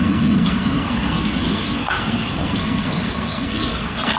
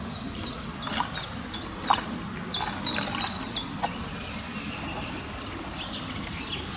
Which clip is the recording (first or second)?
second